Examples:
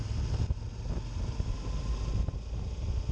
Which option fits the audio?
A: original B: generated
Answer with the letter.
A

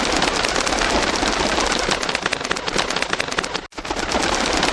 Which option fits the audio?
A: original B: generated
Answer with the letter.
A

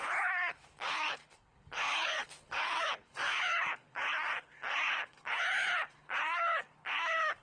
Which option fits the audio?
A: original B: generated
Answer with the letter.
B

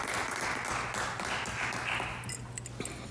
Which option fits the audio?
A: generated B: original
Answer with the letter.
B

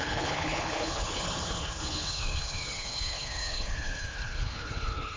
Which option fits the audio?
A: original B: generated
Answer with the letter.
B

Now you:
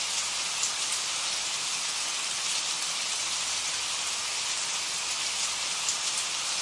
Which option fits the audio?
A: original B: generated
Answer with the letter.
A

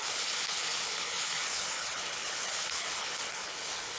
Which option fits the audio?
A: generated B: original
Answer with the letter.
A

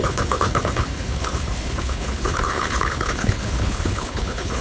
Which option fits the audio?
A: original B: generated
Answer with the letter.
B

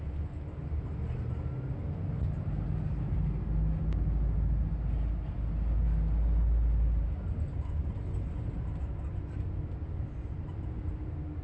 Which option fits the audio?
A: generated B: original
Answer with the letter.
B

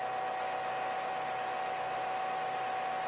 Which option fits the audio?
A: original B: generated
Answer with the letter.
A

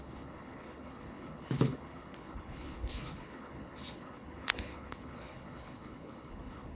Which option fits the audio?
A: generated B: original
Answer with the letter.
A